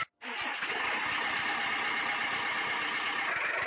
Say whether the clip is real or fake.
real